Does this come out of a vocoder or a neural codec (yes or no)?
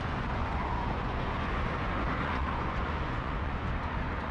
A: yes